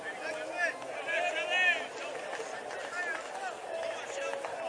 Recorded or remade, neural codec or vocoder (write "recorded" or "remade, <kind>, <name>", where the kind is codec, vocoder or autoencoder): recorded